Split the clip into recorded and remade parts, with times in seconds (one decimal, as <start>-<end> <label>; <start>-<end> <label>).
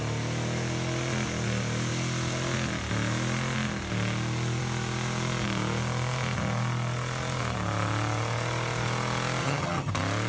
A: 0.0-9.4 recorded; 9.4-9.9 remade; 9.9-10.3 recorded